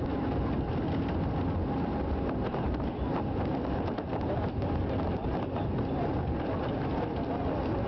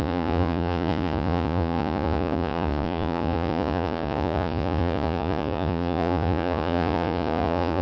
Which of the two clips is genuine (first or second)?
first